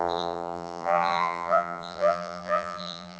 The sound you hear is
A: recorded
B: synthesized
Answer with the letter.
B